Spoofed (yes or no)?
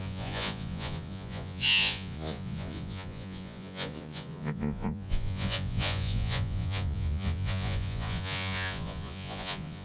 yes